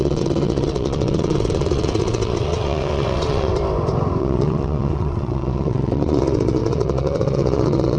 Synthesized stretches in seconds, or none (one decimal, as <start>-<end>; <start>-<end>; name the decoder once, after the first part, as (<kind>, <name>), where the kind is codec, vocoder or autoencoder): 0.0-3.5 (vocoder, WaveNeXt); 4.2-8.0